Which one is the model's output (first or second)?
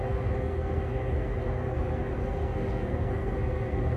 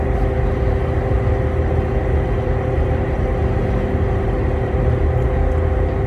first